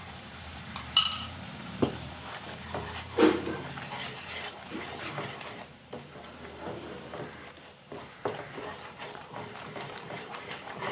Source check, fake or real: fake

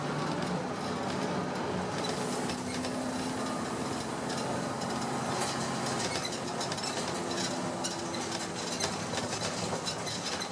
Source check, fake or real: real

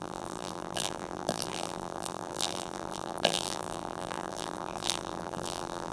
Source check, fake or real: fake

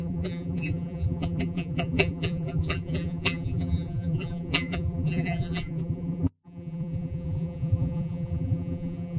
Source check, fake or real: fake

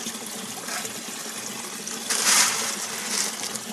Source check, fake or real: real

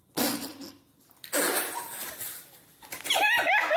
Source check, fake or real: real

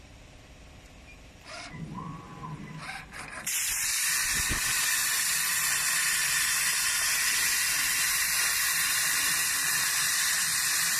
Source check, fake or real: fake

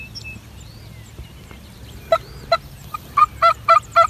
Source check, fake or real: real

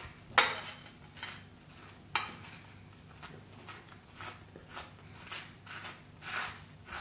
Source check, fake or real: real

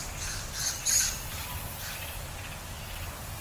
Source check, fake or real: fake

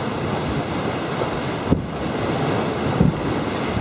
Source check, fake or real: real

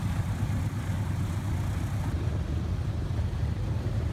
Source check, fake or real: real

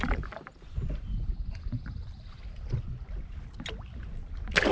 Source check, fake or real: real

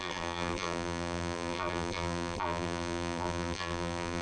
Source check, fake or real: fake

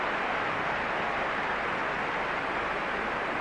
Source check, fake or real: real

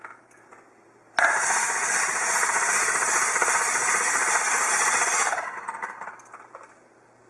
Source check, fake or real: real